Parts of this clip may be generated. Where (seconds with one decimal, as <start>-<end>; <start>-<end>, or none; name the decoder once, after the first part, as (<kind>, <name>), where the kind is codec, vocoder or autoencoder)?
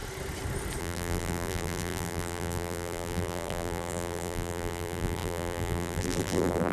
0.8-6.7 (vocoder, BigVGAN v2)